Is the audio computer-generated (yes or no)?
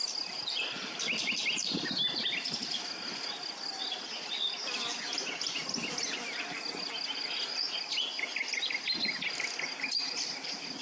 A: no